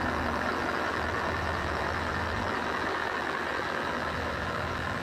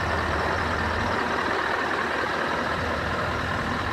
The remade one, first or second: first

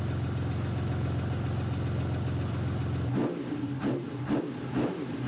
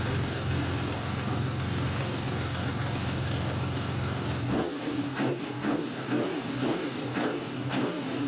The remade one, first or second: second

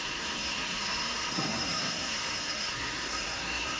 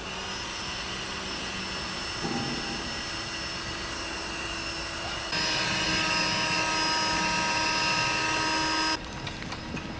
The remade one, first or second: first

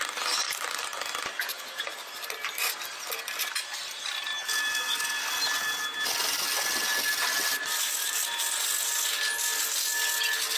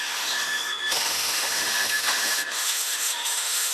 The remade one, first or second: second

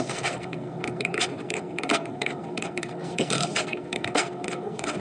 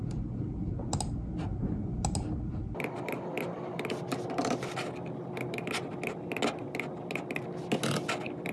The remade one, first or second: first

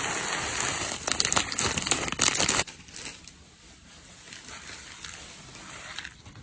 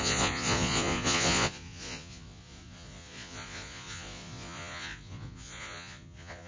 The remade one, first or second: second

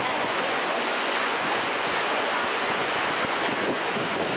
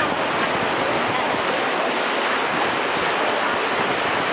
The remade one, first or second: first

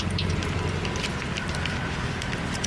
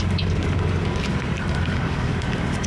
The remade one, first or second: second